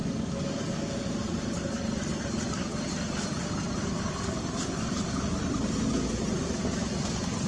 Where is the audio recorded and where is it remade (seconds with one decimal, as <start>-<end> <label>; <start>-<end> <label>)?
0.0-7.5 recorded